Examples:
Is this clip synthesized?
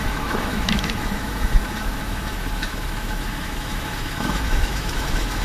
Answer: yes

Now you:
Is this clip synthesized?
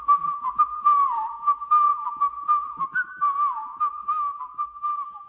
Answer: yes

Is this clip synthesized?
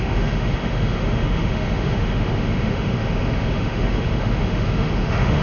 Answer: yes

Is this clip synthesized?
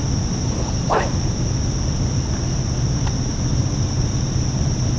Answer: no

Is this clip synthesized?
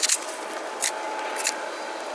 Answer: no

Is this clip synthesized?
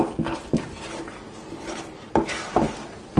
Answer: no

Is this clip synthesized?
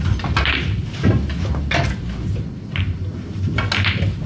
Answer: no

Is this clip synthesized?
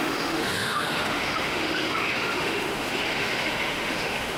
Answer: yes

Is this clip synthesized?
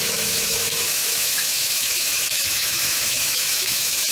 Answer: yes